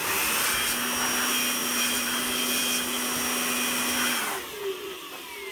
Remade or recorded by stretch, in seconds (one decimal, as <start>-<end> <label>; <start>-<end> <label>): 0.0-1.6 recorded; 1.6-2.2 remade; 2.2-4.4 recorded; 4.4-5.0 remade; 5.0-5.5 recorded